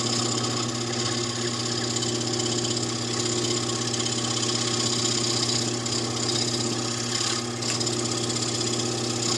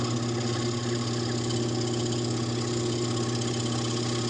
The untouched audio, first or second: first